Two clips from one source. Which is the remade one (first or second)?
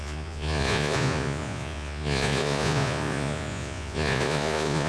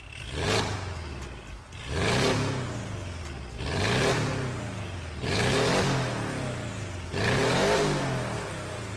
first